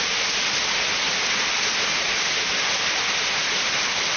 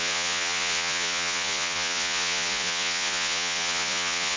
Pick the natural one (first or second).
first